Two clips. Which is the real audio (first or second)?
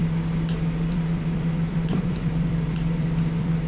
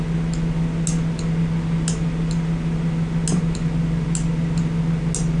second